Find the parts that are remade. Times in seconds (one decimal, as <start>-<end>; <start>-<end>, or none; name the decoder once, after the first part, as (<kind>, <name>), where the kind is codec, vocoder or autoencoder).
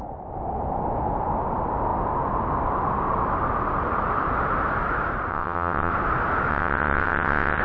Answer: 5.3-5.9 (vocoder, WaveNeXt); 6.5-7.6